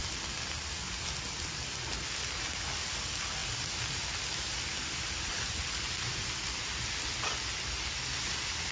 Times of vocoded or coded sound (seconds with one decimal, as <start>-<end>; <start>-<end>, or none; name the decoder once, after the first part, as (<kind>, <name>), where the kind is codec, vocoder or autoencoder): none

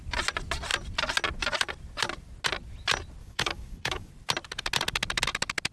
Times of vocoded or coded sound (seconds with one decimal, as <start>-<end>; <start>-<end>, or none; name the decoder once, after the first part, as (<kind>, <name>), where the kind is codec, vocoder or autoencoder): 3.2-4.1 (codec, DAC)